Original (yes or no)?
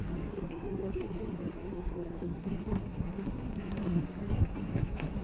no